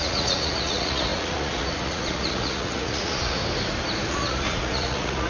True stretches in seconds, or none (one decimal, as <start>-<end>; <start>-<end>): 3.4-4.1